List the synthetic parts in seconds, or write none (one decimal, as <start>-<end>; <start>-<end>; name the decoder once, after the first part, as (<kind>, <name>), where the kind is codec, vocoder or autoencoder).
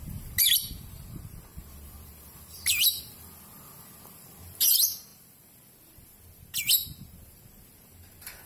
0.0-8.5 (vocoder, BigVGAN v2)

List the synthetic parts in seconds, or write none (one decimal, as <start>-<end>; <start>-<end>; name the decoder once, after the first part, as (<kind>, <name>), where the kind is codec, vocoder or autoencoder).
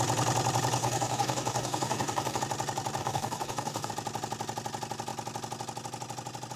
0.8-2.4 (codec, DAC); 3.0-3.9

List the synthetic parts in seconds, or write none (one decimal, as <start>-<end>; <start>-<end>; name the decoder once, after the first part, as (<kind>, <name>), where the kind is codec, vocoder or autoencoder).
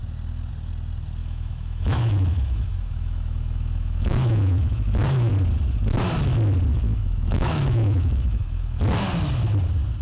1.2-5.3 (autoencoder, DAC-VAE); 6.7-8.8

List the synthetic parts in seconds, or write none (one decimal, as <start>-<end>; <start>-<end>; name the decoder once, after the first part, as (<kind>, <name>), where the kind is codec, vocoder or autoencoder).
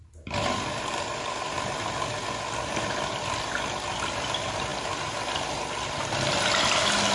none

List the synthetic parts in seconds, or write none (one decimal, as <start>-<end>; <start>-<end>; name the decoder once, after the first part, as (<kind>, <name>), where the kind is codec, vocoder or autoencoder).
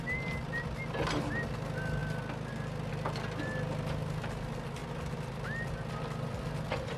none